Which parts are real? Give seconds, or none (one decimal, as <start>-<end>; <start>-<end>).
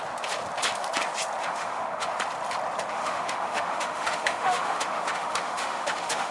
0.0-1.4; 2.1-2.9